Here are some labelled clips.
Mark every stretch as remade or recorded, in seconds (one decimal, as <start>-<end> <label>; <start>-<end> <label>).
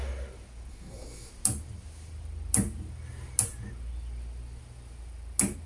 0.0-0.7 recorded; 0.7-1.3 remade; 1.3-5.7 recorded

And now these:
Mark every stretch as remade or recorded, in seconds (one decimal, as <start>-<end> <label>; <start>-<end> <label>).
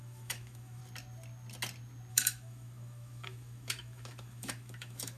0.0-0.8 remade; 0.8-2.1 recorded; 2.1-5.2 remade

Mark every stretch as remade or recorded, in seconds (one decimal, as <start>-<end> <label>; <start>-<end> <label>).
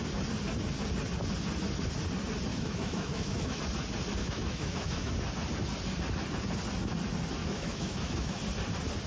0.0-2.5 recorded; 2.5-3.6 remade; 3.6-4.2 recorded; 4.2-5.1 remade; 5.1-7.4 recorded; 7.4-8.4 remade; 8.4-9.1 recorded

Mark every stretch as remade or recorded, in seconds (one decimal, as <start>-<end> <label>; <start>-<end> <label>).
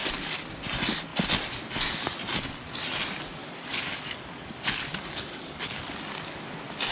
0.0-0.5 remade; 0.5-3.4 recorded; 3.4-6.0 remade; 6.0-6.9 recorded